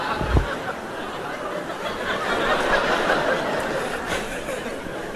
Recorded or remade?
recorded